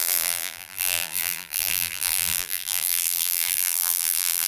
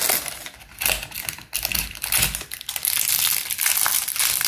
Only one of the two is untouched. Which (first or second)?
second